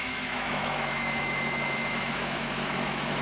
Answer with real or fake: fake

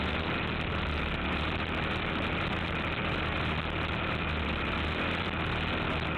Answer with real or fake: real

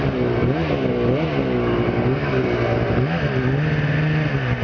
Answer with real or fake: real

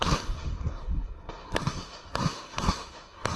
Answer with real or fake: fake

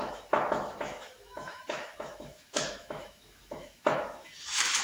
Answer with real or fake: fake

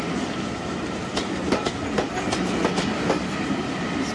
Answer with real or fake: real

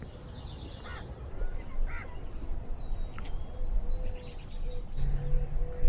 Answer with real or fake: real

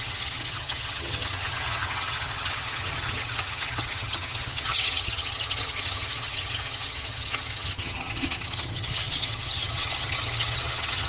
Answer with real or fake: fake